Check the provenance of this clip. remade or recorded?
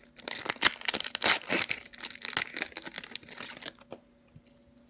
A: recorded